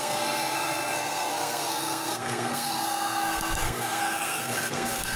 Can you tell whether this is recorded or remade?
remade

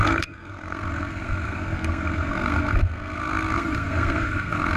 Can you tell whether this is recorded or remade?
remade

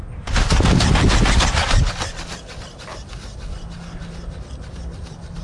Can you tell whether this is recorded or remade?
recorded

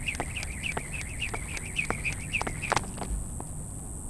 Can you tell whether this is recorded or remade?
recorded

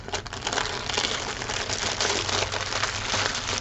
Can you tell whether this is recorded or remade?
recorded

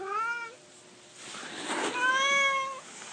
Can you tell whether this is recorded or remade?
recorded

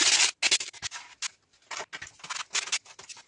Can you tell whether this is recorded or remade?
recorded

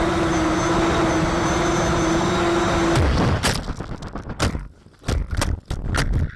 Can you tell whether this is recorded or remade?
recorded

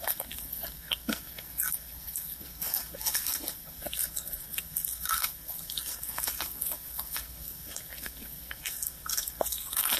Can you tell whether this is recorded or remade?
remade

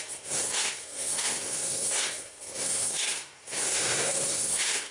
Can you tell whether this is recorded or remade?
remade